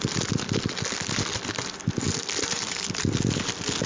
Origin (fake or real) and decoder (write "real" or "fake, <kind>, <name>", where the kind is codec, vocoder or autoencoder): real